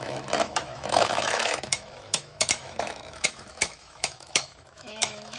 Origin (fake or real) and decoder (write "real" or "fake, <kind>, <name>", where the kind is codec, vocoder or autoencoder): fake, autoencoder, DAC-VAE